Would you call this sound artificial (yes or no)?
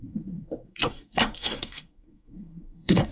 yes